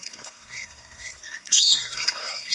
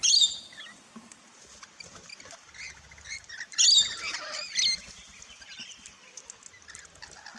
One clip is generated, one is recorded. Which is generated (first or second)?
first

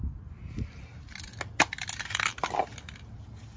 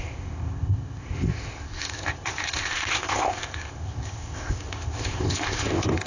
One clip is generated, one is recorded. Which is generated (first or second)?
second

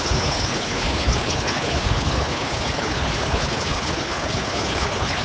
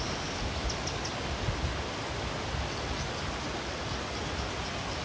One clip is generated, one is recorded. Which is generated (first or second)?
first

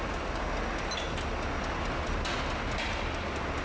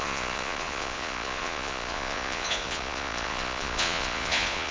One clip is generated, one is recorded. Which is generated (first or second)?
second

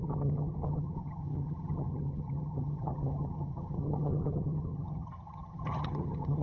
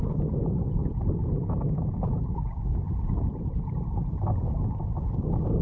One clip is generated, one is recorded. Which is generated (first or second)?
first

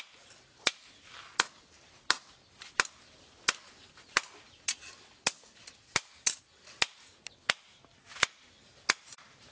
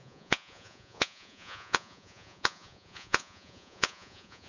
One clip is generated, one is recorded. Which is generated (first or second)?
second